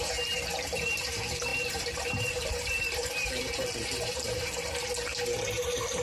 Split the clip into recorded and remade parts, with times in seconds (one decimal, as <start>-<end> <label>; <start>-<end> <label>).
0.0-6.0 remade